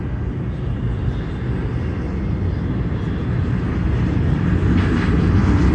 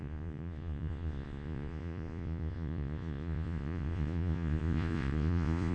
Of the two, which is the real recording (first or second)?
first